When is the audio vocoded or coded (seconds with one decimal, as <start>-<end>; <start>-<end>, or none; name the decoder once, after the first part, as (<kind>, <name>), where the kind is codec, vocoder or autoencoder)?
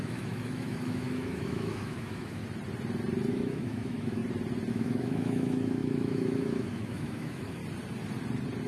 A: 0.0-2.4 (autoencoder, DAC-VAE); 3.3-4.2; 4.7-7.6